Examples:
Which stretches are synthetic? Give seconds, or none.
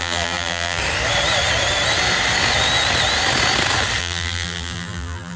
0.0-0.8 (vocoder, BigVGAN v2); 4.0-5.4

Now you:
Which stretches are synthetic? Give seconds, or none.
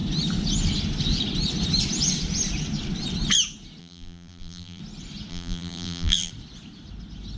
3.8-4.8 (vocoder, BigVGAN v2); 5.3-6.3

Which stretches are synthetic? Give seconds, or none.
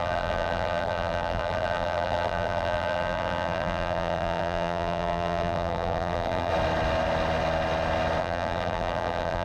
0.0-6.5 (vocoder, BigVGAN v2); 8.2-9.4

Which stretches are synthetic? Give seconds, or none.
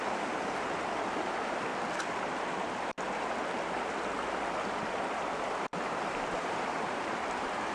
0.0-1.7 (vocoder, BigVGAN v2); 6.1-7.7